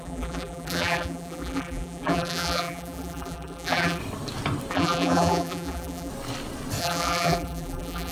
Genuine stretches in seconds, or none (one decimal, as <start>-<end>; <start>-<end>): 4.0-4.7; 6.1-6.8